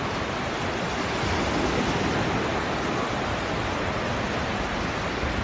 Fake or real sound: real